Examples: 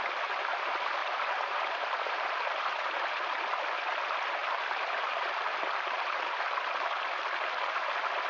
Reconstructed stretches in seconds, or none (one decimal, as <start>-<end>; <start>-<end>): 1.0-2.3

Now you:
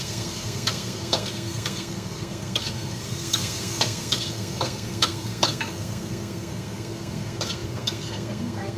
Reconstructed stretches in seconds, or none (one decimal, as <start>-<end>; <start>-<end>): 0.0-8.8

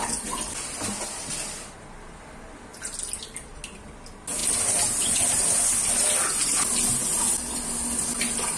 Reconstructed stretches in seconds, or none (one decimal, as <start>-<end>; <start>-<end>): none